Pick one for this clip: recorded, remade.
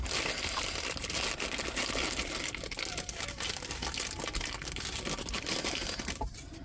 recorded